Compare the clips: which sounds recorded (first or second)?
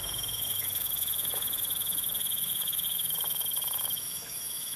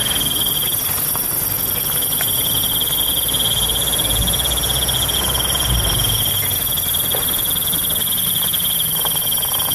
second